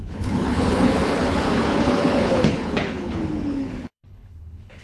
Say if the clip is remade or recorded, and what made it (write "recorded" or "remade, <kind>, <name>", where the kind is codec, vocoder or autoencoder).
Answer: remade, codec, HILCodec